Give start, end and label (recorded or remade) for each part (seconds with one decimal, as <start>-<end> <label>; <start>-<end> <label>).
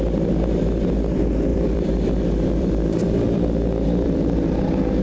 0.0-1.5 recorded; 1.5-4.5 remade; 4.5-5.0 recorded